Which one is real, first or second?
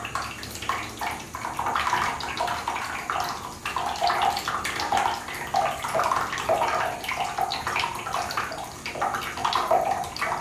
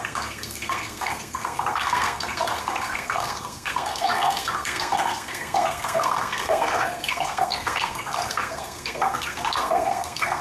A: first